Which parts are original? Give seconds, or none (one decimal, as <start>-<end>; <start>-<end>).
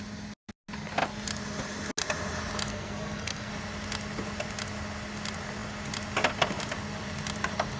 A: 0.0-2.7; 3.5-7.8